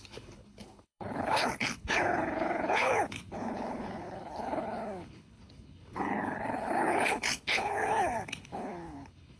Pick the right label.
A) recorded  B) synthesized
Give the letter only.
B